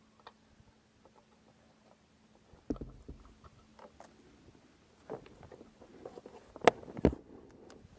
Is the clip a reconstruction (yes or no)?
no